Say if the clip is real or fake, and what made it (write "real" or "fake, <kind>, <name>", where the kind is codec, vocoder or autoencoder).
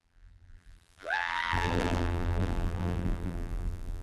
fake, vocoder, BigVGAN v2